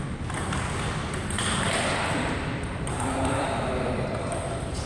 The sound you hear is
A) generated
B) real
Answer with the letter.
A